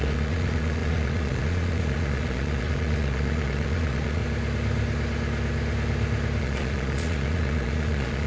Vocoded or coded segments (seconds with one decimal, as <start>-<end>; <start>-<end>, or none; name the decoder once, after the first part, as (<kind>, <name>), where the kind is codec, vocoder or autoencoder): 0.0-4.2 (vocoder, Vocos); 6.4-8.3

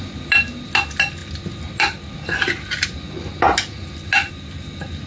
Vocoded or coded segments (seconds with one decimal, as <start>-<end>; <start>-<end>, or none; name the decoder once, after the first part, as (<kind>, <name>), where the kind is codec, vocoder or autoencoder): none

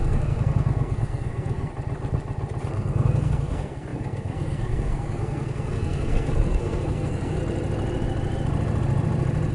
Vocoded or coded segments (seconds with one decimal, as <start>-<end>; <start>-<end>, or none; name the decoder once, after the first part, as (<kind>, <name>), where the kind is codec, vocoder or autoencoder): 0.0-1.7 (codec, SNAC); 2.7-7.4

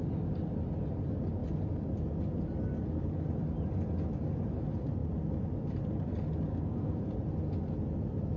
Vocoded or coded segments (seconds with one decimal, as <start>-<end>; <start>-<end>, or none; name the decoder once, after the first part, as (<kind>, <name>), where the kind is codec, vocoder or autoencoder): 6.5-7.0 (codec, SNAC)

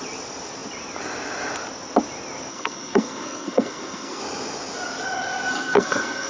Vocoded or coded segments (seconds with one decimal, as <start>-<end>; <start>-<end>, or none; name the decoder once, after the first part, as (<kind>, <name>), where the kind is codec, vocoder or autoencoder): 2.5-4.2 (codec, SNAC); 5.5-6.3